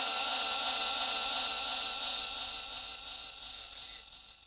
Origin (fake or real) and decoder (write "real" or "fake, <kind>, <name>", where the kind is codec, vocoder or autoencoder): real